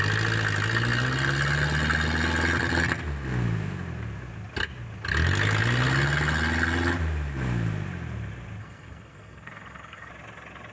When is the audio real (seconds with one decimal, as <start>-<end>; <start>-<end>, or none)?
0.0-8.6; 10.1-10.7

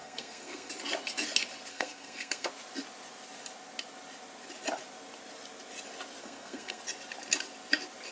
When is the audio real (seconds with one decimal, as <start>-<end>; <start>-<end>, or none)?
0.7-1.7; 2.5-6.2; 6.8-8.1

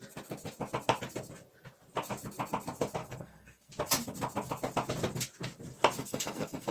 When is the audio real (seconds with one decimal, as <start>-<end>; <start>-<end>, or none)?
0.0-3.0; 3.7-6.0

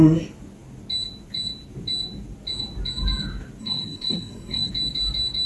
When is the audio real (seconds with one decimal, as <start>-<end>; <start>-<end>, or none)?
0.0-3.6; 4.7-5.5

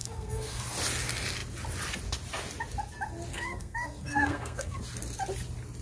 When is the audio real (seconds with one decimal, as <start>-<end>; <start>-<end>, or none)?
0.6-3.3; 4.8-5.8

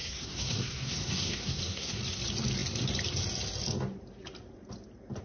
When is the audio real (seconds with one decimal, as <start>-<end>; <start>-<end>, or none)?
2.0-5.2

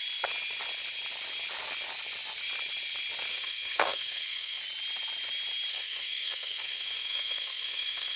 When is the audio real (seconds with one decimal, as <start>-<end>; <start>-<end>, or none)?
0.0-3.3; 4.6-5.7

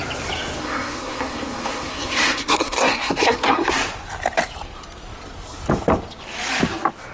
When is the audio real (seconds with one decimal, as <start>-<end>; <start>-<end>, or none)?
0.0-0.6; 3.7-7.1